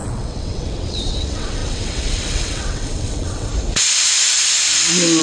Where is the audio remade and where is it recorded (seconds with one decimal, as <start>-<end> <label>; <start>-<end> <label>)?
0.0-3.5 remade; 3.5-5.2 recorded